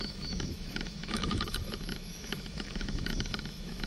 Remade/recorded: remade